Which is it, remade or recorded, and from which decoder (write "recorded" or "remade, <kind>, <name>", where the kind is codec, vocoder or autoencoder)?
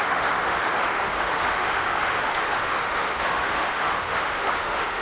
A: remade, autoencoder, DAC-VAE